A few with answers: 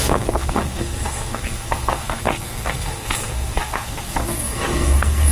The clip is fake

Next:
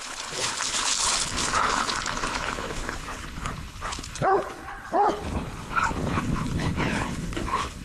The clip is fake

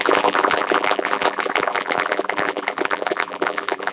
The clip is fake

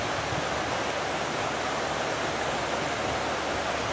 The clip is real